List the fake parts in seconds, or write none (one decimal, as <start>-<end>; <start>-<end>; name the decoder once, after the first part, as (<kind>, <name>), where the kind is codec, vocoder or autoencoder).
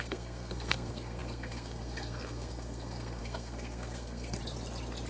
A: 0.0-4.4 (codec, SNAC)